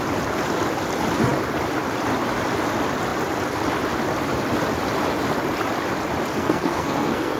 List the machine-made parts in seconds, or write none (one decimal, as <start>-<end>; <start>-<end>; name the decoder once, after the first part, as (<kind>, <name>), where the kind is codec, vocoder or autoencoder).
6.3-7.4 (codec, SNAC)